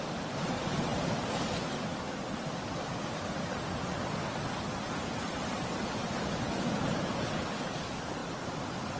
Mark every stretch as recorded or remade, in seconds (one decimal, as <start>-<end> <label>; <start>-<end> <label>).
0.0-8.2 recorded; 8.2-9.0 remade